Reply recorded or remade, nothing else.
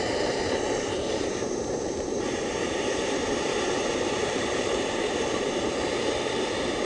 remade